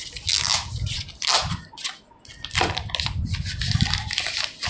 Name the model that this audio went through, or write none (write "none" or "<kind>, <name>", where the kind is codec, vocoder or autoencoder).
none